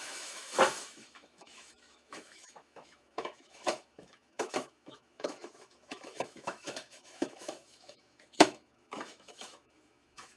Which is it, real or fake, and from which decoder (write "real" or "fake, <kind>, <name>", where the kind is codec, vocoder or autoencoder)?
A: fake, autoencoder, DAC-VAE